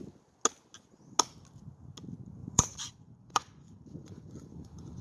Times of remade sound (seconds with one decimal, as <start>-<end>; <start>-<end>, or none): 2.4-5.0